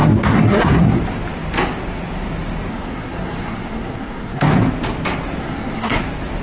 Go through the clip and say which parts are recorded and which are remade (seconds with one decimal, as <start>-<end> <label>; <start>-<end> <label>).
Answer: 0.0-1.0 remade; 1.0-2.7 recorded; 2.7-4.5 remade; 4.5-5.4 recorded; 5.4-6.0 remade; 6.0-6.4 recorded